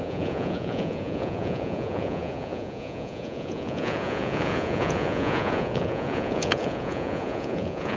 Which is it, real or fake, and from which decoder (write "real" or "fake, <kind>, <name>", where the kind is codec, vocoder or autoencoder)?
fake, vocoder, Vocos